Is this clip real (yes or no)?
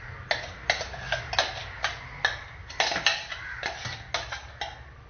yes